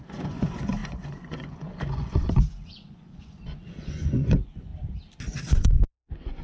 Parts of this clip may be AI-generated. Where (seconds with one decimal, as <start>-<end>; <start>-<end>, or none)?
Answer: 0.0-4.7; 5.3-6.4

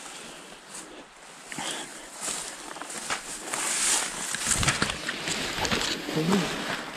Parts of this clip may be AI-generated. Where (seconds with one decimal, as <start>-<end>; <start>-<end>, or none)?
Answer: none